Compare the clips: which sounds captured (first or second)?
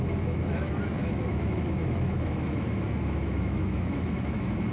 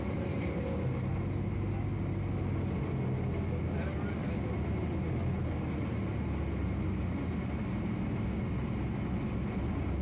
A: second